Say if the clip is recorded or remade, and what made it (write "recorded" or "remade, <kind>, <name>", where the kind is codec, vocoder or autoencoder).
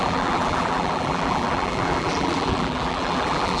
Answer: remade, vocoder, BigVGAN v2